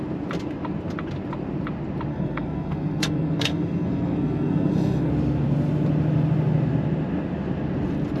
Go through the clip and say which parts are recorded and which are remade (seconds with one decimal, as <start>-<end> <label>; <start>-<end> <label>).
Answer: 0.0-2.1 recorded; 2.1-5.1 remade; 5.1-8.2 recorded